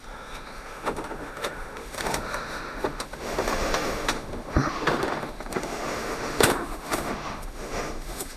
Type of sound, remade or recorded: remade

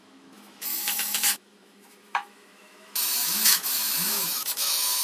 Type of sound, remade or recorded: remade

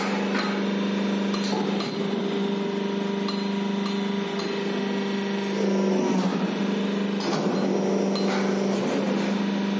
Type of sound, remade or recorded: recorded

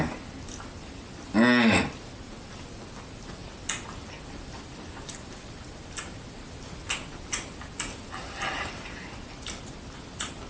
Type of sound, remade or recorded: recorded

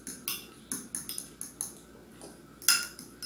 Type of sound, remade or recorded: recorded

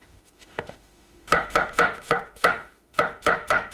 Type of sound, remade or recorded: remade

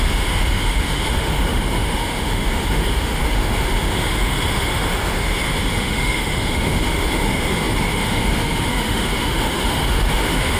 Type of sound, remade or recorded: remade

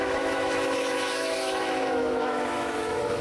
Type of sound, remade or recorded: remade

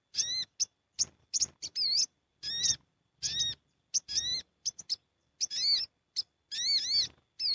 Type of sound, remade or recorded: recorded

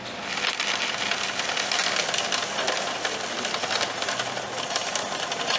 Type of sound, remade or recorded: recorded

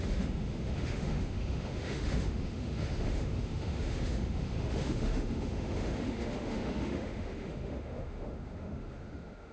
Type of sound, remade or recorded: remade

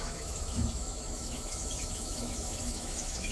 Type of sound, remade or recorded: remade